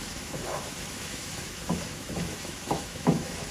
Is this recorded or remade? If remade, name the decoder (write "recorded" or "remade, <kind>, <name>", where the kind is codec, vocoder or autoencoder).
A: remade, autoencoder, DAC-VAE